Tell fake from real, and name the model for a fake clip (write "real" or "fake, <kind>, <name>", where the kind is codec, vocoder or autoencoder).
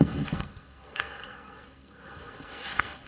fake, codec, SNAC